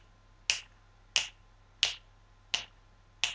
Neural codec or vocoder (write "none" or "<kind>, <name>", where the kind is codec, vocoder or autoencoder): none